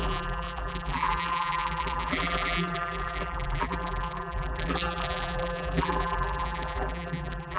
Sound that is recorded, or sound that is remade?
remade